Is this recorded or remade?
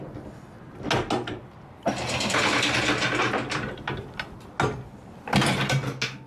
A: recorded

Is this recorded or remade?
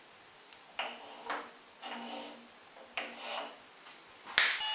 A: recorded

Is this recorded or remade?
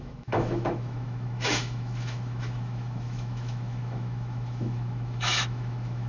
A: remade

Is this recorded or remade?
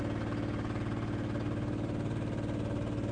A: recorded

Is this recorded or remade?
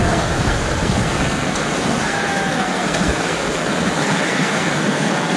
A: remade